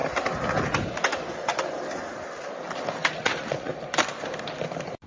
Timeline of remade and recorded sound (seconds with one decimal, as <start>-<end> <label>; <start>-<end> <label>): 0.0-3.1 recorded; 3.1-3.7 remade; 3.7-5.1 recorded